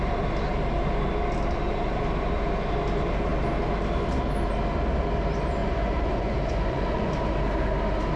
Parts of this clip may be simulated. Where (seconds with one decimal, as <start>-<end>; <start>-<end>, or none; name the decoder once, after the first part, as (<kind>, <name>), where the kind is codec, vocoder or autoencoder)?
5.6-7.1 (vocoder, Vocos)